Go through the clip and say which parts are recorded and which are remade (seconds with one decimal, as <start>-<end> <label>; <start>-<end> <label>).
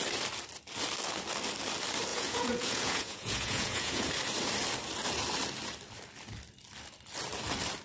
0.0-2.1 recorded; 2.1-4.1 remade; 4.1-7.8 recorded